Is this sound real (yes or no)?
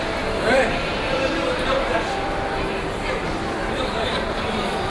no